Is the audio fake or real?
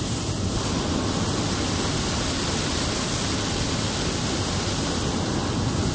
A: real